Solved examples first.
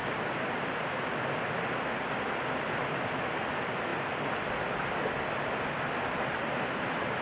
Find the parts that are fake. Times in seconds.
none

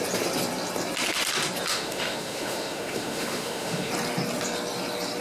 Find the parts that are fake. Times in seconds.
1.7-3.9 (autoencoder, DAC-VAE)

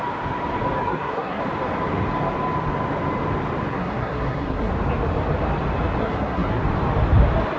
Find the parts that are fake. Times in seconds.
0.8-1.4 (codec, SNAC); 3.7-4.7; 6.0-6.6

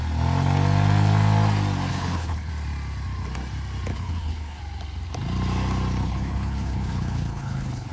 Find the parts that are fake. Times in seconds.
1.9-2.5 (codec, HILCodec); 3.9-4.6; 6.0-7.9

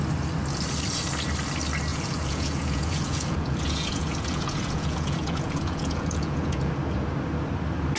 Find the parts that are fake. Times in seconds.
1.9-6.7 (vocoder, Vocos)

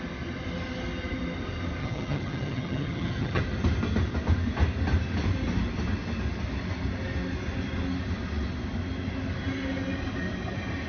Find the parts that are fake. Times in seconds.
1.8-3.4 (vocoder, HiFi-GAN)